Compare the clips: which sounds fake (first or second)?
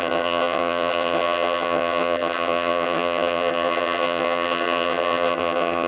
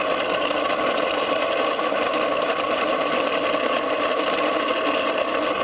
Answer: first